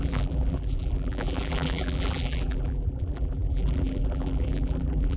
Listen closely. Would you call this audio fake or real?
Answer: fake